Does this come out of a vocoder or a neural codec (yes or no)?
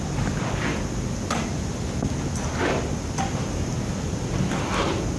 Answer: no